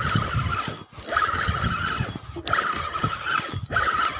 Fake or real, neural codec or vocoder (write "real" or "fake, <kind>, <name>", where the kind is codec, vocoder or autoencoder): real